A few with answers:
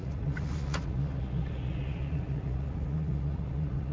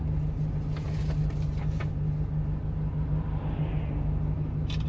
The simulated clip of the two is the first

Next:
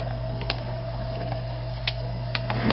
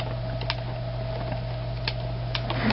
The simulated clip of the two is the first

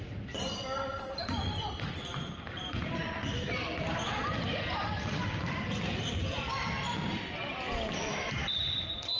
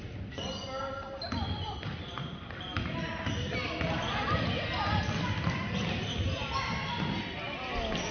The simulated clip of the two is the first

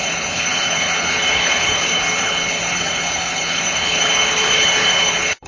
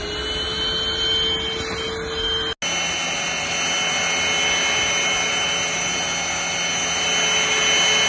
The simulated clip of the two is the first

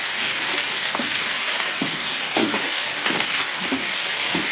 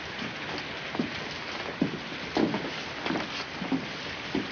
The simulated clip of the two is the first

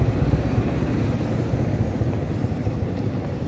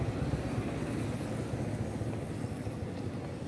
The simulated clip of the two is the first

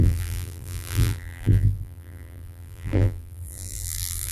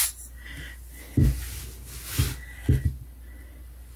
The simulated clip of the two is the first